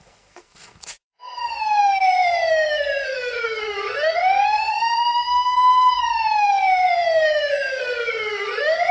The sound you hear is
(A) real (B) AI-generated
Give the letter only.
B